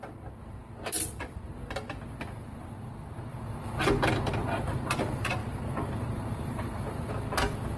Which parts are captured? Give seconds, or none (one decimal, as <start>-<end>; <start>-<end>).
0.0-4.4; 5.0-5.4; 7.1-7.8